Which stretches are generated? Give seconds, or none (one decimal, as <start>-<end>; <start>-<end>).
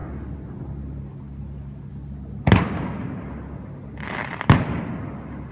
none